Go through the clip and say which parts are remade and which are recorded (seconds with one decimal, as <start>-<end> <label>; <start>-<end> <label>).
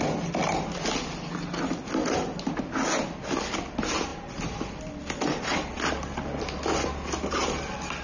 0.0-8.0 recorded